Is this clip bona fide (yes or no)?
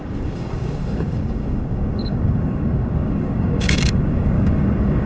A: no